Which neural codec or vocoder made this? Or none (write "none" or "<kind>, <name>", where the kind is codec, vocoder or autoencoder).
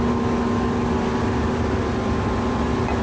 none